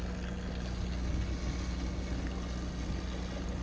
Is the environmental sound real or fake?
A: real